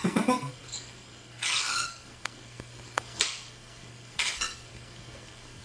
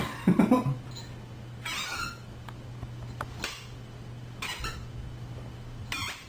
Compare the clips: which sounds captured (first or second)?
second